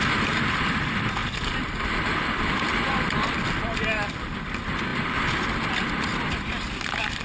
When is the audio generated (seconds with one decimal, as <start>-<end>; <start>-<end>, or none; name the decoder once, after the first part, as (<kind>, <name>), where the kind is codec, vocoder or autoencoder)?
0.0-7.2 (vocoder, BigVGAN v2)

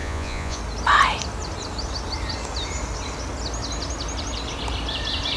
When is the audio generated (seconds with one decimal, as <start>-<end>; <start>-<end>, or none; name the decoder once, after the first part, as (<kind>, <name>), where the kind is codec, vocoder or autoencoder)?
0.0-0.6 (vocoder, Vocos)

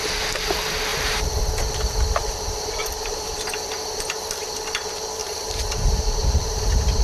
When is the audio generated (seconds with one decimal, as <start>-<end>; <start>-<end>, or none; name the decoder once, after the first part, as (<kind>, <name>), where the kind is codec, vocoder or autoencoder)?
0.9-1.4 (vocoder, BigVGAN v2); 2.2-3.7; 5.2-7.0

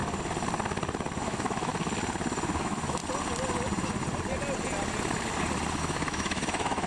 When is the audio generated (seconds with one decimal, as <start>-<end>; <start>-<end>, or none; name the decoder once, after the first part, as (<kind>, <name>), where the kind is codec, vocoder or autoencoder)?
1.2-1.7 (autoencoder, DAC-VAE); 2.6-3.0; 5.8-6.9

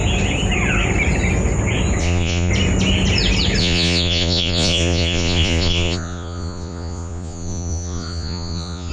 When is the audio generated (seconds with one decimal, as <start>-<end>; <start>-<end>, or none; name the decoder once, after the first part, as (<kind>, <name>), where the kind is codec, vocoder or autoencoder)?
2.0-2.5 (vocoder, Vocos); 3.6-8.9